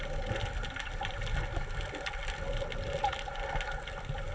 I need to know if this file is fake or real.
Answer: real